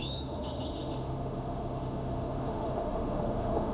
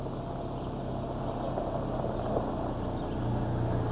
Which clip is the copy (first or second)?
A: first